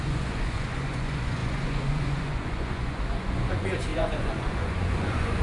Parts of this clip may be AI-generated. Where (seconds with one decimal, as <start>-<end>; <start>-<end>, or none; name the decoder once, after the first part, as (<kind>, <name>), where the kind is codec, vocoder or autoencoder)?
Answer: 0.0-5.4 (vocoder, Vocos)